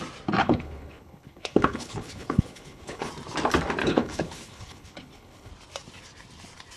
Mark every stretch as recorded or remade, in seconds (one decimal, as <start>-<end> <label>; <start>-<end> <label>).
0.0-0.4 recorded; 0.4-3.1 remade; 3.1-3.8 recorded; 3.8-5.5 remade; 5.5-6.8 recorded